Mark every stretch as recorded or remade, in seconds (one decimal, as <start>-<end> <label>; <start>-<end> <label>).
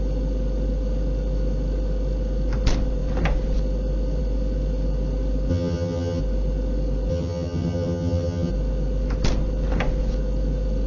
0.0-5.5 recorded; 5.5-6.2 remade; 6.2-7.1 recorded; 7.1-8.5 remade; 8.5-10.9 recorded